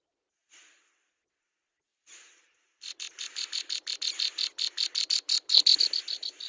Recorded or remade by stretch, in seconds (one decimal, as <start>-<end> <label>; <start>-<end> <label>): 0.0-1.9 recorded; 1.9-5.8 remade; 5.8-6.5 recorded